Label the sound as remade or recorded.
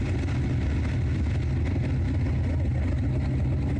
recorded